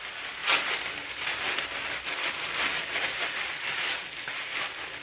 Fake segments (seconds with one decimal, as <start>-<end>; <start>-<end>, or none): none

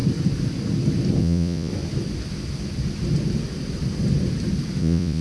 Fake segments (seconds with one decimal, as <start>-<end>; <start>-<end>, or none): 1.2-1.7; 4.8-5.2

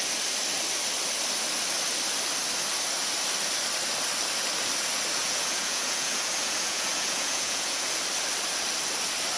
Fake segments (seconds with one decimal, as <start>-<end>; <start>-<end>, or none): 5.2-8.0

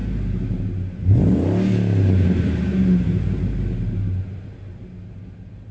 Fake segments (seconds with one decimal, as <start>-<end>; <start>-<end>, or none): none

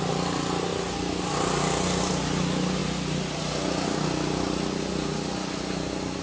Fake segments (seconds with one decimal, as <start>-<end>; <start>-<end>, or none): none